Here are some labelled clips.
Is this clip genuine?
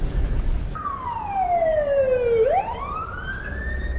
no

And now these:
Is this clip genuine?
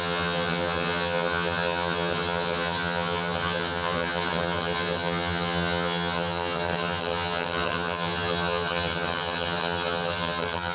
no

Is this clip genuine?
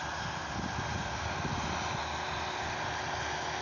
yes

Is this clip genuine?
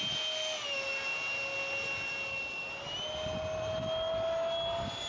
yes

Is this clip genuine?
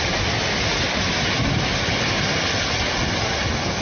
yes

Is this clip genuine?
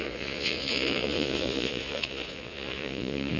no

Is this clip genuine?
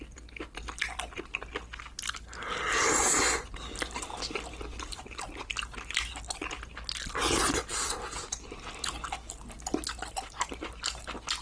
yes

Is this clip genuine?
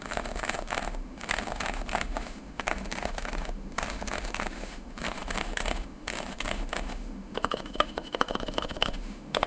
no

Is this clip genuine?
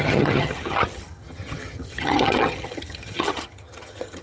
no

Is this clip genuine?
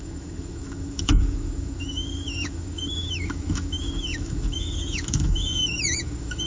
no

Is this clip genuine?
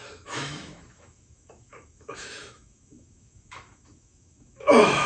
no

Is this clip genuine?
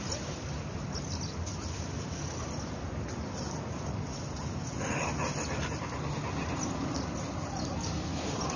yes